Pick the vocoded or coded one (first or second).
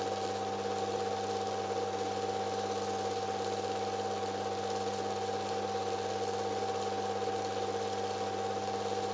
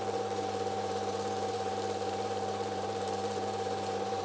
second